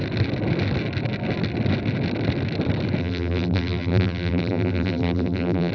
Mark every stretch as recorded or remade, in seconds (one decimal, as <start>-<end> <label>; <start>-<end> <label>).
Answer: 0.0-3.0 recorded; 3.0-5.7 remade